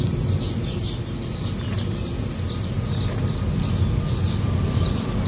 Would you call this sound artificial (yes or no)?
no